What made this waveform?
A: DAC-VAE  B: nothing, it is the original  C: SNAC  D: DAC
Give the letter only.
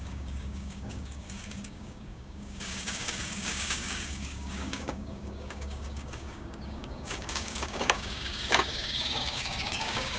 D